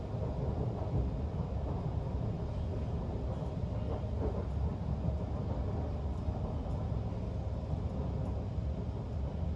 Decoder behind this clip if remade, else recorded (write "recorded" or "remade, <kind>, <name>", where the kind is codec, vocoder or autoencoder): recorded